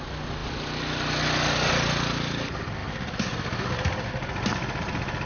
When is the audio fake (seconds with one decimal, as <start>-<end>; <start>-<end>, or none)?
2.8-4.1